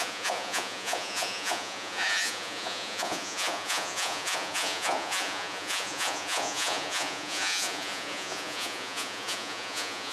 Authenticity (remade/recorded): remade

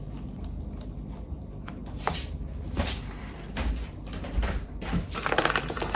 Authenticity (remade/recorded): recorded